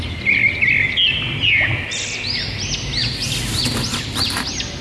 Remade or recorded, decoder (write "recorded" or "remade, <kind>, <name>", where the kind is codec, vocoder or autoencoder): recorded